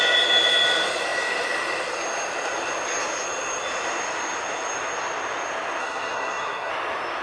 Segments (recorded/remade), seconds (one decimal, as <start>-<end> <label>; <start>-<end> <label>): 0.0-5.8 recorded; 5.8-6.7 remade; 6.7-7.2 recorded